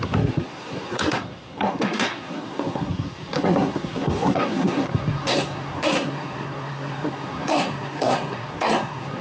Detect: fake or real fake